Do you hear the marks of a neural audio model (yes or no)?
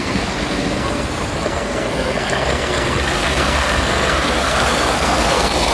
yes